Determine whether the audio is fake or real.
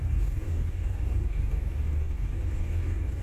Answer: fake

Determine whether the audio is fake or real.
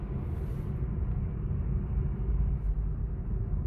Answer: real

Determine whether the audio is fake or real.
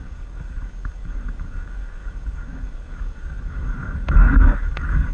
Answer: fake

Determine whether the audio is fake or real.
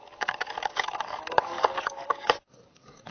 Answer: fake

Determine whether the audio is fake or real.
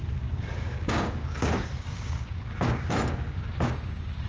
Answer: fake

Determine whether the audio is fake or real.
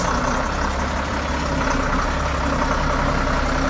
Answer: real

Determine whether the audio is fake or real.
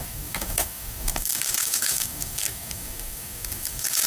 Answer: fake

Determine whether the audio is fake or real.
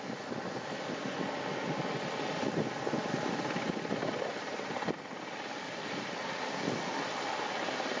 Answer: real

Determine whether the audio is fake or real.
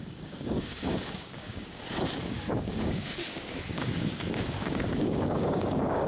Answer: fake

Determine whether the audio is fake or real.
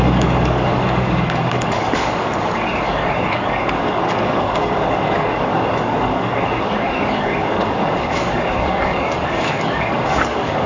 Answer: fake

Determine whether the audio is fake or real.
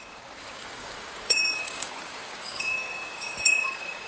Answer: fake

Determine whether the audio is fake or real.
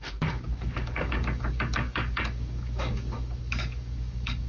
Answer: fake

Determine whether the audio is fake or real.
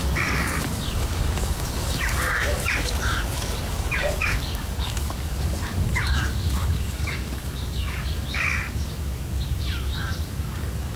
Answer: fake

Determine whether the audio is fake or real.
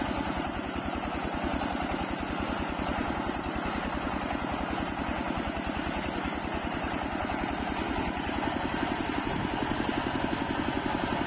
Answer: real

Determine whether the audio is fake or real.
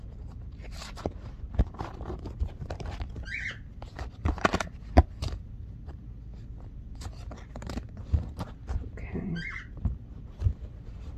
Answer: real